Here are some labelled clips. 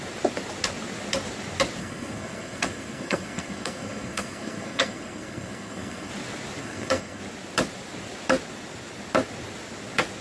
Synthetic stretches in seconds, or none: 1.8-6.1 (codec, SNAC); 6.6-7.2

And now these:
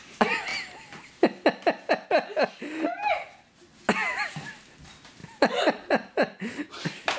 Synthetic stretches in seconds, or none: 0.0-0.5 (vocoder, BigVGAN v2); 4.1-7.2

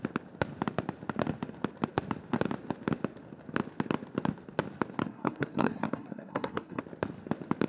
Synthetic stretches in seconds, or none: 5.0-6.8 (codec, SNAC)

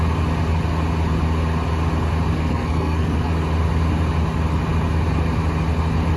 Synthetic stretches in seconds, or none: 2.4-3.3 (codec, SNAC)

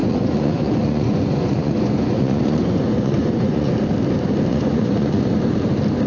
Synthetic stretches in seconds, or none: 0.0-3.7 (vocoder, Vocos); 4.5-5.3

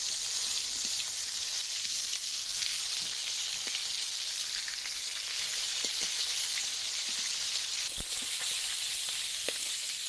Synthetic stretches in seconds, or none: 1.8-2.8 (codec, SNAC); 9.3-10.1

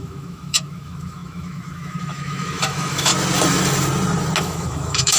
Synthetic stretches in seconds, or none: 0.0-3.1 (autoencoder, DAC-VAE); 4.4-5.2

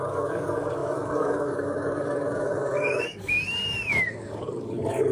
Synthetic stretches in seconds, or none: 0.0-5.1 (codec, DAC)